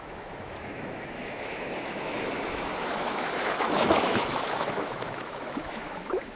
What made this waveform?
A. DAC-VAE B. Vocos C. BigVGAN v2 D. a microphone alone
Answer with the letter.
A